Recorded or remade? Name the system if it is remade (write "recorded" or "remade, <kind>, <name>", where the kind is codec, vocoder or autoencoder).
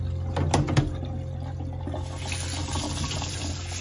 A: recorded